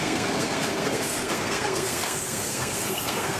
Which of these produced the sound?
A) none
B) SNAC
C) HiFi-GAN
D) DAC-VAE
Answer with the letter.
B